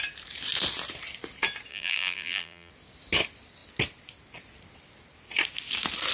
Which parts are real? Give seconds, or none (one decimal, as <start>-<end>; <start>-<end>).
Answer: 0.0-1.7; 2.7-6.1